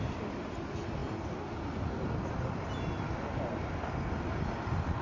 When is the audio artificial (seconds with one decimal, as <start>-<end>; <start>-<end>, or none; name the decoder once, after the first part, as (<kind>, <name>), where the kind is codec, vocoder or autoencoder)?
none